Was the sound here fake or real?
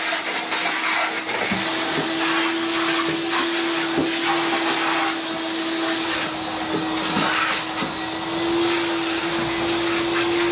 real